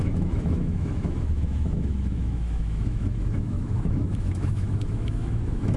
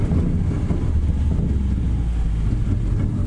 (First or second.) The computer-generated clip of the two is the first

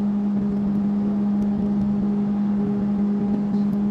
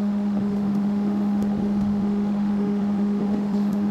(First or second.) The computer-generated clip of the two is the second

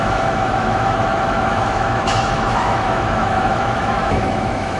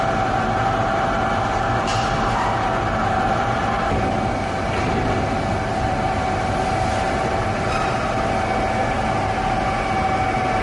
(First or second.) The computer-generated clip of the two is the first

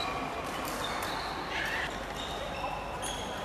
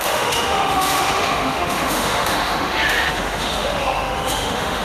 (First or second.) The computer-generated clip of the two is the second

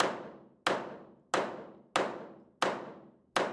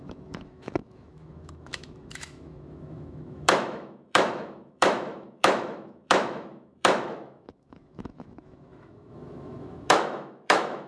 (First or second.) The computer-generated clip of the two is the second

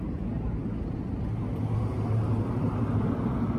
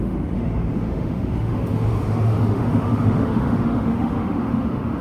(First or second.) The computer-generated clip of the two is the second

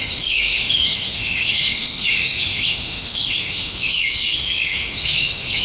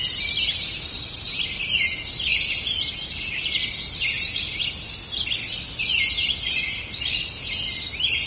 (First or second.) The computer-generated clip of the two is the first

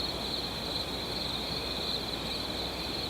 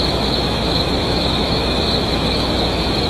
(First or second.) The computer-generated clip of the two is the second